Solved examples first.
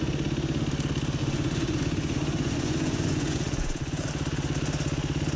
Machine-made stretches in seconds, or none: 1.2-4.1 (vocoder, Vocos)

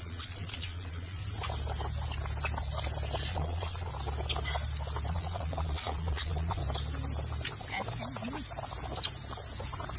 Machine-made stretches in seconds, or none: 0.0-1.2 (vocoder, Vocos); 3.3-3.9; 5.1-6.6